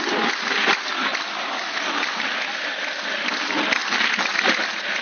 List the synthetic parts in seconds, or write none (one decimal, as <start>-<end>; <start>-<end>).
3.8-4.6

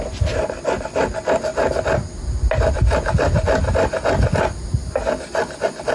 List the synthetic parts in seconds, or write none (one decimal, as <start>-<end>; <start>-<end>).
4.8-5.9